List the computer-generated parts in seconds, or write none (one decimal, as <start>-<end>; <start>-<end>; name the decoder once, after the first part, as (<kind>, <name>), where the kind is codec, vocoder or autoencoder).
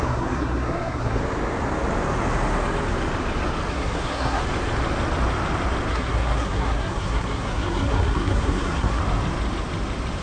0.0-1.2 (codec, SNAC); 3.7-4.4; 5.9-9.0